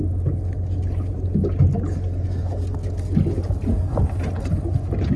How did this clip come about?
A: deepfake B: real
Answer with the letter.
B